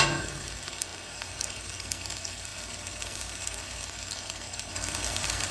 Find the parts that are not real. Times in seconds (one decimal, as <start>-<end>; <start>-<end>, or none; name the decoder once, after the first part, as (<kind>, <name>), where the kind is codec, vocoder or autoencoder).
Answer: 0.0-5.5 (codec, SNAC)